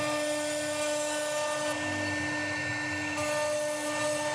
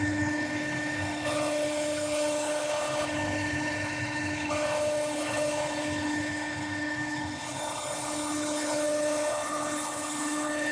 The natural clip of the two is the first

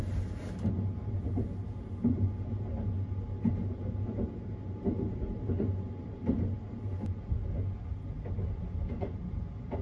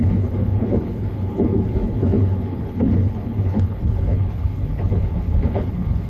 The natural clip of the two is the first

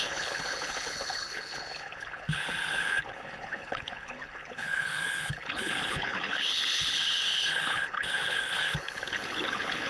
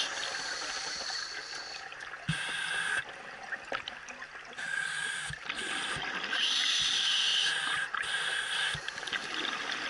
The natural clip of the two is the second